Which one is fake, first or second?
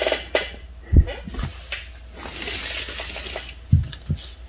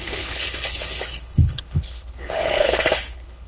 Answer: second